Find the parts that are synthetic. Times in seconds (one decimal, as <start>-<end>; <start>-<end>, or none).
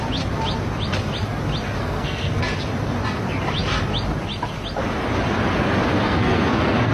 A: 1.8-2.4; 5.9-6.9